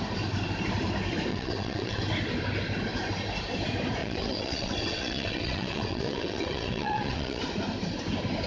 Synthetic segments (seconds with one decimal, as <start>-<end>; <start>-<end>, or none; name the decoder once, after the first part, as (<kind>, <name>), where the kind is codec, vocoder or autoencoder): 1.3-2.0 (vocoder, WaveNeXt); 4.0-7.4